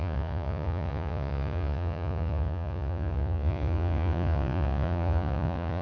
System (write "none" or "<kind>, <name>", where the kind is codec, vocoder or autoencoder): vocoder, Vocos